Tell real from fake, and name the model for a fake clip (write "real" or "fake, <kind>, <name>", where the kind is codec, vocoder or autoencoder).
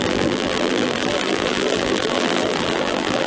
fake, vocoder, BigVGAN v2